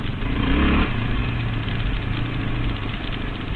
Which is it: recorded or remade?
recorded